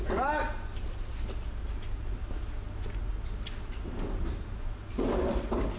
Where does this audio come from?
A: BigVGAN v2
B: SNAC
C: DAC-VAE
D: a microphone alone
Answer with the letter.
D